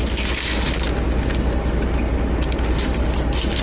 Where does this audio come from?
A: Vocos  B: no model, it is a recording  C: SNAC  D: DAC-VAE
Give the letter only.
B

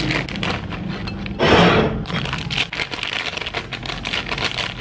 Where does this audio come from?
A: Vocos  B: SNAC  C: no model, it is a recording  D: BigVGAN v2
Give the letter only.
C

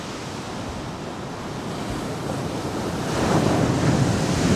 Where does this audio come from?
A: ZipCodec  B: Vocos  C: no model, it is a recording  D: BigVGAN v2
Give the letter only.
C